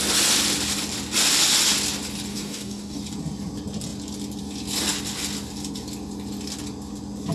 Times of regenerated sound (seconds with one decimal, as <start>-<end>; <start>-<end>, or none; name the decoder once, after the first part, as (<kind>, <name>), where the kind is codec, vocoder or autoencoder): 2.3-3.0 (codec, DAC)